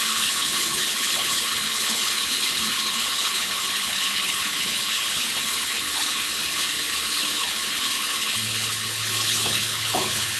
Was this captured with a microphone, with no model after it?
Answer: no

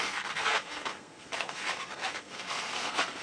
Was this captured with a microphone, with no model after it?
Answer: no